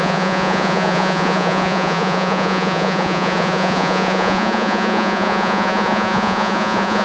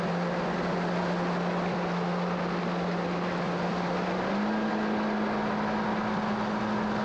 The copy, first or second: first